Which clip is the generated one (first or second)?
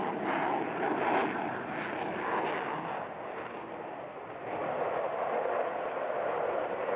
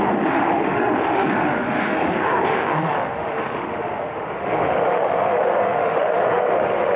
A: second